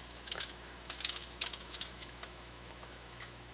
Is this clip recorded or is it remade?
remade